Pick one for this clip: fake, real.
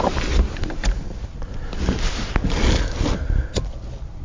real